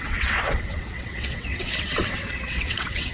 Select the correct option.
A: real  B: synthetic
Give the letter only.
B